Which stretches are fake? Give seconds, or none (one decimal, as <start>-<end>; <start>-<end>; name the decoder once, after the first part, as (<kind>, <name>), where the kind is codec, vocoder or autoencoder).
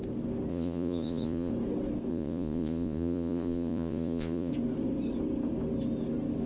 0.5-1.5 (vocoder, Vocos); 2.1-4.5